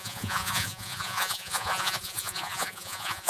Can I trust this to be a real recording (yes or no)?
no